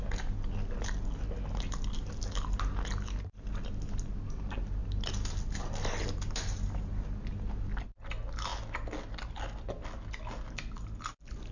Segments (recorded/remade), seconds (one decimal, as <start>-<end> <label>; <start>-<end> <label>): 0.0-11.5 recorded